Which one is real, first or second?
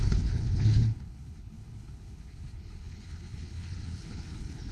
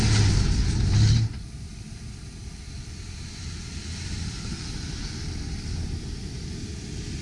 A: second